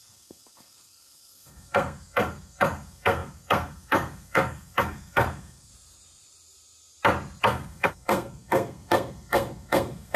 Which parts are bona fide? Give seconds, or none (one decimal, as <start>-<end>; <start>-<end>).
5.7-7.4